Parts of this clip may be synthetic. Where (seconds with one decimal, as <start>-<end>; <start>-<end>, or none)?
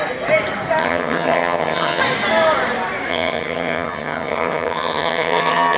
0.8-2.0; 3.1-5.8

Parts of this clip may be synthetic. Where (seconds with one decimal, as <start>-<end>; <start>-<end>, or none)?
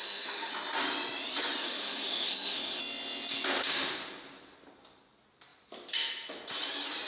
0.0-0.5; 1.6-2.8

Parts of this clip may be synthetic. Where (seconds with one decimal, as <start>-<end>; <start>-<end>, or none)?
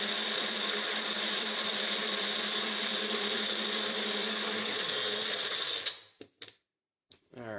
0.0-7.6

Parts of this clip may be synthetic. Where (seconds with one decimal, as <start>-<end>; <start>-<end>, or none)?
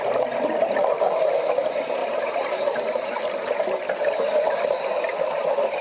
2.0-3.1